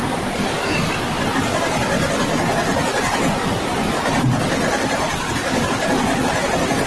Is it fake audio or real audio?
real